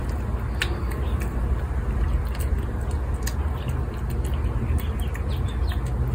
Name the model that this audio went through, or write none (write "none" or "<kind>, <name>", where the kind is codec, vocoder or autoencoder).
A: none